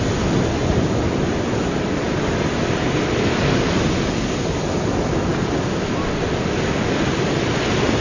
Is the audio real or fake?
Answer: real